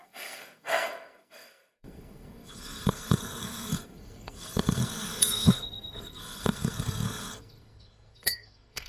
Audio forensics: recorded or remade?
remade